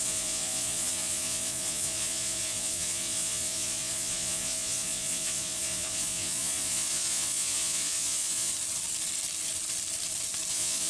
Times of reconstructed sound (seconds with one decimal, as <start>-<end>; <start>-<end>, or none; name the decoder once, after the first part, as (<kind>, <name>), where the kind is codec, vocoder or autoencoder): 0.0-8.5 (vocoder, Vocos); 10.5-10.9